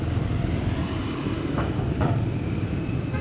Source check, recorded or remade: remade